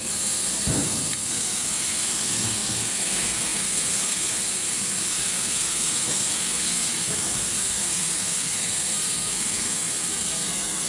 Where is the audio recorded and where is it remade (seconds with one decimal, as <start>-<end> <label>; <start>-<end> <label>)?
0.0-10.9 remade